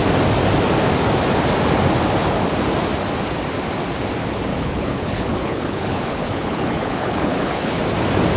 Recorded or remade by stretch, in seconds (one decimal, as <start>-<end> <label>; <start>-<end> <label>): 0.0-4.5 recorded; 4.5-7.8 remade; 7.8-8.4 recorded